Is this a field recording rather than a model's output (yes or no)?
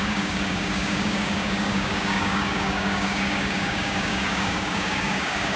no